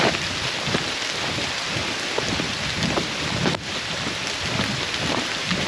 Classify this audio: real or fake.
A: fake